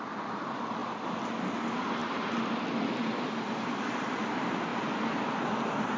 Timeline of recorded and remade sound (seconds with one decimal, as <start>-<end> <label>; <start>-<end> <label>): 0.0-0.8 recorded; 0.8-1.4 remade; 1.4-2.0 recorded; 2.0-4.1 remade; 4.1-4.7 recorded; 4.7-5.5 remade; 5.5-6.0 recorded